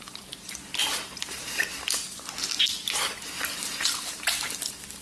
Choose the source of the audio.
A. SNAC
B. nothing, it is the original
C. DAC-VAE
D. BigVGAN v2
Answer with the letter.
D